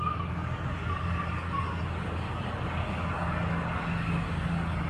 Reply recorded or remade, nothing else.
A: remade